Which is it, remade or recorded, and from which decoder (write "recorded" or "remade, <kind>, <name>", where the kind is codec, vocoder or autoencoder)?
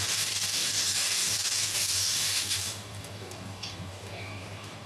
remade, codec, DAC